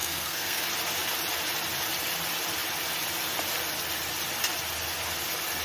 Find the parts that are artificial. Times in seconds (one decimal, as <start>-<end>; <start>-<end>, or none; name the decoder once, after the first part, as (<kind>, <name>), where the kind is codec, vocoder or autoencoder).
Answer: 0.0-0.6 (codec, SNAC)

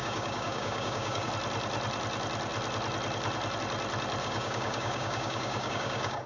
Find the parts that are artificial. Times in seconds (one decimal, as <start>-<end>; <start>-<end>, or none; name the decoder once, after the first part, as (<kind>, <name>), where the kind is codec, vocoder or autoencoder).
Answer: 0.0-1.3 (codec, DAC); 4.2-6.3

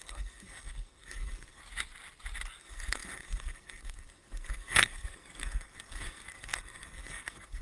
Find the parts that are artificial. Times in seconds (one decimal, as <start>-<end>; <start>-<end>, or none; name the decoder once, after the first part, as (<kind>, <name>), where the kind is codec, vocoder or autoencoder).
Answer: 0.0-1.6 (codec, SNAC); 2.6-7.6

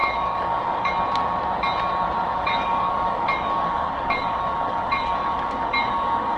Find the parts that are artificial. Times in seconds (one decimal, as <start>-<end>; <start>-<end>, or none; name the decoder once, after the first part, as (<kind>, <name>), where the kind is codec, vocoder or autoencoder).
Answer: 0.0-0.9 (codec, DAC); 2.3-6.4

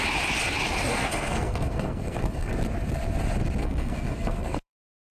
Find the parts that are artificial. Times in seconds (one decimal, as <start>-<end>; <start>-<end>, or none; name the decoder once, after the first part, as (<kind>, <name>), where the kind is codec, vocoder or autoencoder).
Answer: 0.9-2.5 (codec, SNAC); 3.6-5.1